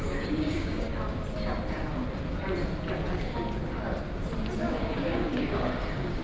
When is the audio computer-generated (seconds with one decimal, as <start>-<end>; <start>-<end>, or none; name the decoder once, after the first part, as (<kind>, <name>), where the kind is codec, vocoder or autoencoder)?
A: 0.0-0.9 (codec, DAC); 4.6-6.2